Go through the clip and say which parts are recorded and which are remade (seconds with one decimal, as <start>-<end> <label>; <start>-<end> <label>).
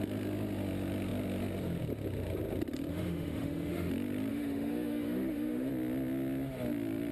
0.0-2.9 recorded; 2.9-3.9 remade; 3.9-4.3 recorded; 4.3-5.7 remade; 5.7-7.1 recorded